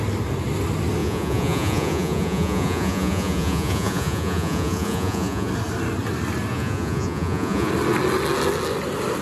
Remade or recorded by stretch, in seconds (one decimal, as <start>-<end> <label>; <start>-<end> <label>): 0.0-1.0 recorded; 1.0-5.5 remade; 5.5-6.5 recorded; 6.5-7.7 remade; 7.7-9.2 recorded